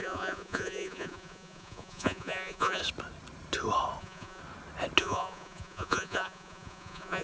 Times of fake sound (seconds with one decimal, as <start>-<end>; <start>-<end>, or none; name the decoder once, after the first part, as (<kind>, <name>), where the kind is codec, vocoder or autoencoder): 0.0-2.8 (vocoder, Vocos); 4.0-4.4; 5.0-7.2